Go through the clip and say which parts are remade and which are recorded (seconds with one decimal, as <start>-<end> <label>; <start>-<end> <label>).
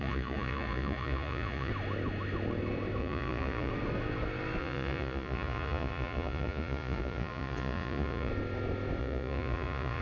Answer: 0.0-1.7 remade; 1.7-3.0 recorded; 3.0-3.7 remade; 3.7-4.6 recorded; 4.6-8.3 remade; 8.3-9.0 recorded; 9.0-10.0 remade